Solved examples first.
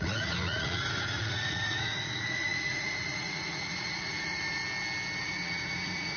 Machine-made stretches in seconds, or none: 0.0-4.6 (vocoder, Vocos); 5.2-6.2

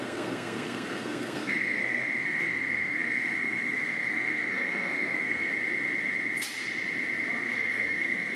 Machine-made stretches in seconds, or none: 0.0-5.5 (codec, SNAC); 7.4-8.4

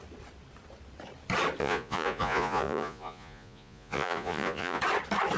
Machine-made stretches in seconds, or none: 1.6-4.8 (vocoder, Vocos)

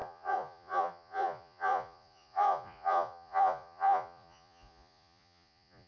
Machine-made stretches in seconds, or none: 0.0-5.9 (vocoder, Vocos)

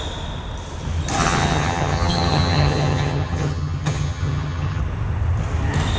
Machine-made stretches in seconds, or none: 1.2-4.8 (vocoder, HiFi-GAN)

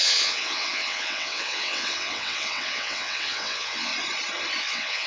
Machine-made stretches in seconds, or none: 0.0-3.9 (vocoder, WaveNeXt); 4.6-5.1

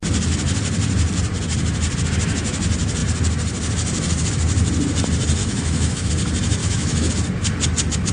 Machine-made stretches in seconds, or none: 5.4-6.1 (autoencoder, DAC-VAE); 6.6-7.1

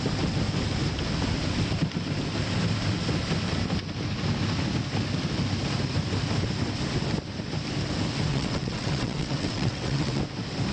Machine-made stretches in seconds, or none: 8.3-10.2 (vocoder, WaveNeXt)